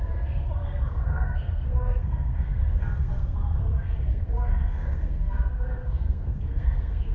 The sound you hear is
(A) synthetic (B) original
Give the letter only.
A